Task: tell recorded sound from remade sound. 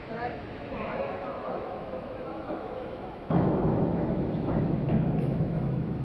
remade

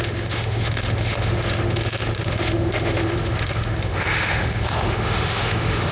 remade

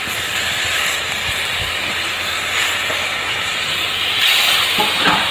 recorded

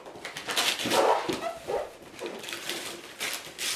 recorded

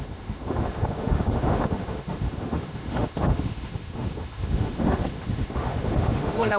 remade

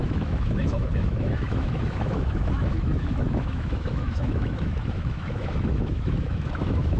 remade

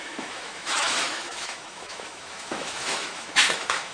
remade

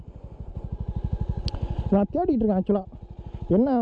recorded